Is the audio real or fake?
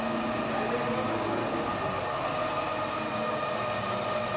real